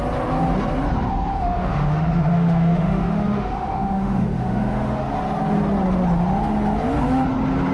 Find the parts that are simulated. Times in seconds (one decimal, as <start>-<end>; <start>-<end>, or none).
1.3-5.0